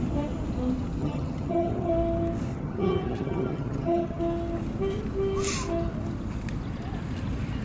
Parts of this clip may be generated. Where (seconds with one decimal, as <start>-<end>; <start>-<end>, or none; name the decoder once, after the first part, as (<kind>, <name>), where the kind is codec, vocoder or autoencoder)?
1.0-1.9 (vocoder, HiFi-GAN); 2.5-4.2